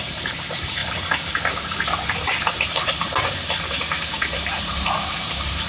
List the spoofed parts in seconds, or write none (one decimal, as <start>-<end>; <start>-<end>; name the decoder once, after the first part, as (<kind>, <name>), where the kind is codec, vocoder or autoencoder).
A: 0.0-0.8 (vocoder, BigVGAN v2); 2.6-5.7